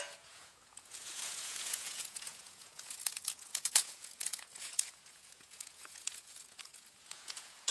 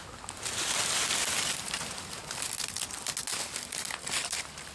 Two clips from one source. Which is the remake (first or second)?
first